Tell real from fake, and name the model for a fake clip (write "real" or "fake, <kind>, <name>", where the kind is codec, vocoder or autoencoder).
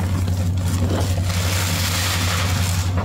real